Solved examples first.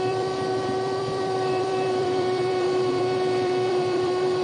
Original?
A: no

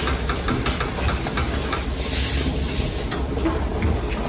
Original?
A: yes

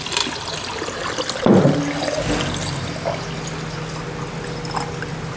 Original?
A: yes